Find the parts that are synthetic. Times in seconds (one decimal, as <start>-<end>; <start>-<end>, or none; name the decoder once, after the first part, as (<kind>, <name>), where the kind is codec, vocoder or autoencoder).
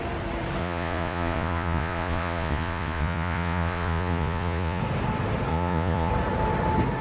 0.6-4.8 (vocoder, Vocos); 5.5-6.1